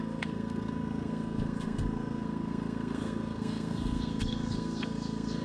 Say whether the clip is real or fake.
fake